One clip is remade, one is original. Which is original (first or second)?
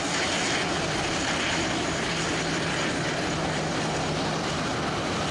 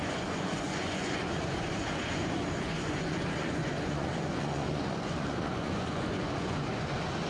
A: first